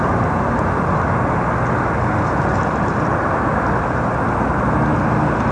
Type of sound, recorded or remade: recorded